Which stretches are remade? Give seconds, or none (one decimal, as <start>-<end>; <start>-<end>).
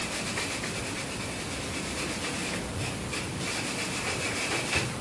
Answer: 0.0-0.8